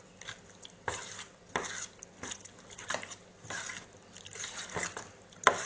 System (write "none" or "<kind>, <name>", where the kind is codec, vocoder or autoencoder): none